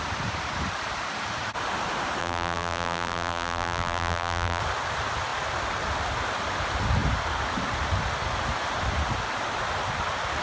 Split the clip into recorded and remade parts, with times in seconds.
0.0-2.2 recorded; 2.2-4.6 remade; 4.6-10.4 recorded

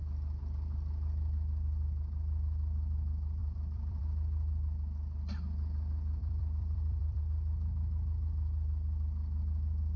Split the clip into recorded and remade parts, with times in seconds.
0.0-3.4 recorded; 3.4-4.0 remade; 4.0-6.2 recorded; 6.2-7.2 remade; 7.2-10.0 recorded